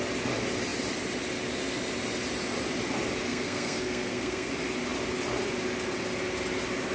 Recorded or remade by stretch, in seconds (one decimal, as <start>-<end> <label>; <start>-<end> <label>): 0.0-3.3 recorded; 3.3-4.5 remade; 4.5-6.9 recorded